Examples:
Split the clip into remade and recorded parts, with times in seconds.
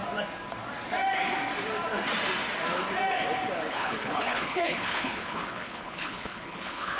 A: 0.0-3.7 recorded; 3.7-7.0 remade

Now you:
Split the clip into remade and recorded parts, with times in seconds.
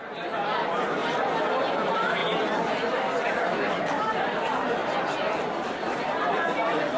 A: 0.0-1.0 remade; 1.0-1.7 recorded; 1.7-2.2 remade; 2.2-3.8 recorded; 3.8-4.8 remade; 4.8-5.5 recorded; 5.5-7.0 remade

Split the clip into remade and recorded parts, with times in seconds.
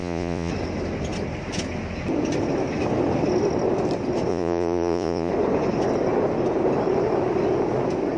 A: 0.0-0.5 remade; 0.5-4.3 recorded; 4.3-5.3 remade; 5.3-8.2 recorded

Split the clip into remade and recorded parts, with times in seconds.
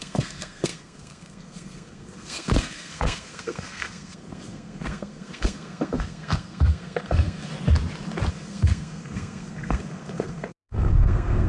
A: 0.0-7.5 remade; 7.5-8.3 recorded; 8.3-11.5 remade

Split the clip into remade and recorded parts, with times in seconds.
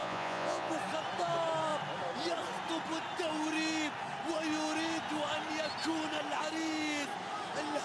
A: 0.0-0.7 remade; 0.7-7.8 recorded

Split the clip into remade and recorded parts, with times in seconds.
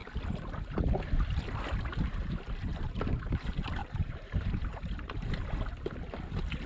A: 0.0-2.7 recorded; 2.7-3.2 remade; 3.2-3.8 recorded; 3.8-5.6 remade; 5.6-6.7 recorded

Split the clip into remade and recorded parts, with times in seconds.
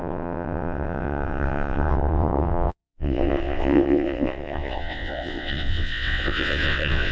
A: 0.0-7.1 remade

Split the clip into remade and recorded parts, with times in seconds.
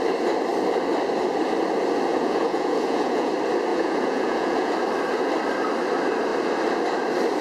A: 0.0-2.1 recorded; 2.1-3.3 remade; 3.3-3.7 recorded; 3.7-4.7 remade; 4.7-7.4 recorded